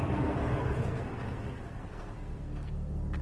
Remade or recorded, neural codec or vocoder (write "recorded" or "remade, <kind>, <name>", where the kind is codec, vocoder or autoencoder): remade, codec, SNAC